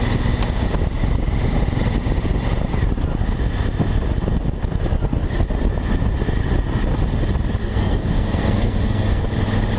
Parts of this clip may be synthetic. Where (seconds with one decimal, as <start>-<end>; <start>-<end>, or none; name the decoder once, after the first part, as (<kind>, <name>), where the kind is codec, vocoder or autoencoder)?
7.6-9.2 (codec, SNAC)